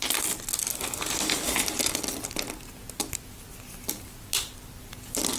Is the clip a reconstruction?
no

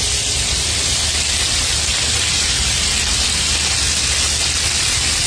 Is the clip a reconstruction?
no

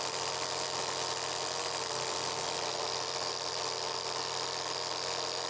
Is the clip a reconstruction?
no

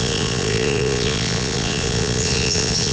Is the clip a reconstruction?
yes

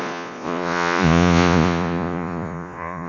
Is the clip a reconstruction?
yes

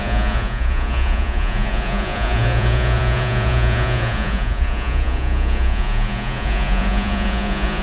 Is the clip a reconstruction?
yes